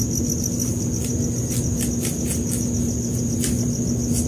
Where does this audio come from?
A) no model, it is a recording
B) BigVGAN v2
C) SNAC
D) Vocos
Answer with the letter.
A